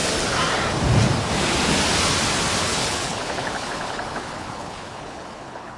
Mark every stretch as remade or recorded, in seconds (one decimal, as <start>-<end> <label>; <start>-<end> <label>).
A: 0.0-2.6 recorded; 2.6-5.8 remade